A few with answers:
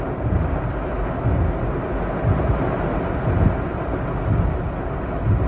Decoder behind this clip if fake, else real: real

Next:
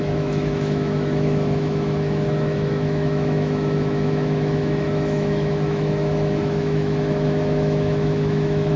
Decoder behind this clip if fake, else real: fake, autoencoder, DAC-VAE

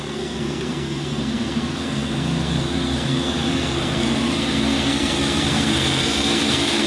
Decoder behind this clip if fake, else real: fake, codec, SNAC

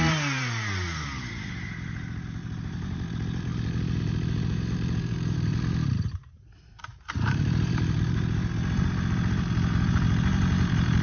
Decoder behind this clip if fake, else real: fake, vocoder, BigVGAN v2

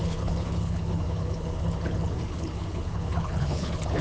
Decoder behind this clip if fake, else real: fake, codec, HILCodec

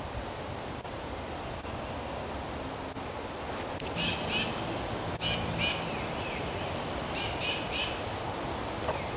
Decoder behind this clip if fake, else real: real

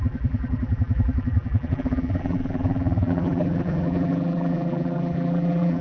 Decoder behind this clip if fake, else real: fake, vocoder, BigVGAN v2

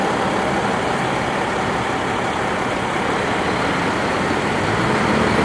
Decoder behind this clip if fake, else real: real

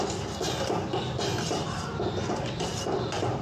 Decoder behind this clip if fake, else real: real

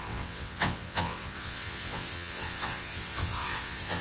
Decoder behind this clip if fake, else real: fake, vocoder, WaveNeXt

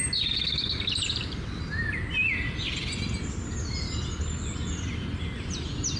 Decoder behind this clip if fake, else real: real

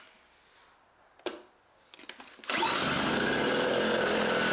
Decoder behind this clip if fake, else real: real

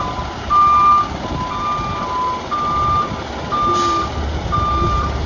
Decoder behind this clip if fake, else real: real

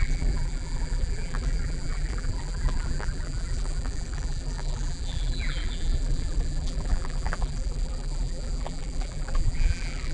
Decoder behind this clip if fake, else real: fake, vocoder, BigVGAN v2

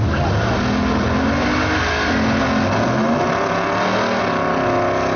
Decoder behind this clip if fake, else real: real